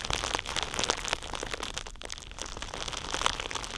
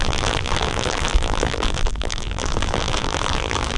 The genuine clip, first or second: first